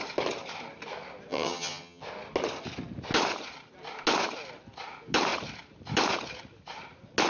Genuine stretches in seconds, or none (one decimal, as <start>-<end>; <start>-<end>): 0.0-1.3; 2.0-7.3